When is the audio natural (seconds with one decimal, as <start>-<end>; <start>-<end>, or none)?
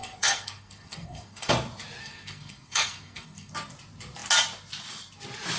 1.5-2.0; 3.5-5.6